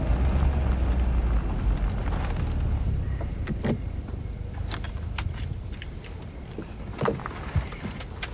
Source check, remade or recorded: recorded